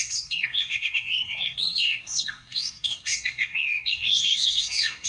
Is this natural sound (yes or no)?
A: no